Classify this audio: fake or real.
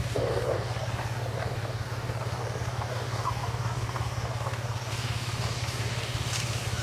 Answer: fake